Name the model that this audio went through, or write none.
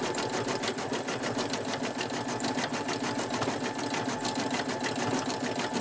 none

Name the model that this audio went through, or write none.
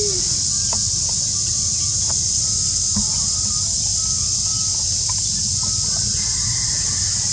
none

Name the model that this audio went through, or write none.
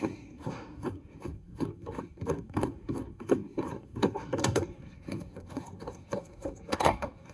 codec, SNAC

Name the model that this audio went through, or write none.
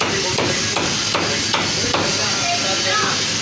none